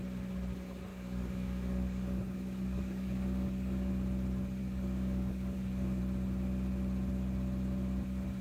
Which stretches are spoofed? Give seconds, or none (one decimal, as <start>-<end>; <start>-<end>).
0.9-3.9; 4.6-6.0